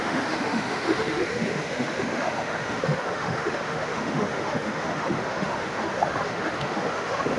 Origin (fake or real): fake